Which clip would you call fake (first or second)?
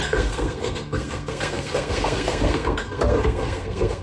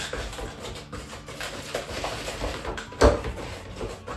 first